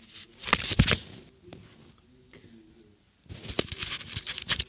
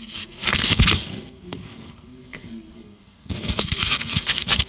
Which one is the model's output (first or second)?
second